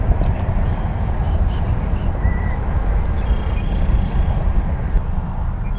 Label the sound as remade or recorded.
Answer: recorded